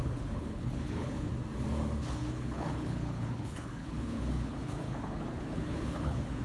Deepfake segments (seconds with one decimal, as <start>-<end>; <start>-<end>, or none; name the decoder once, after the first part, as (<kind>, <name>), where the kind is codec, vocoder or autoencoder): 0.0-1.3 (codec, HILCodec); 2.1-6.4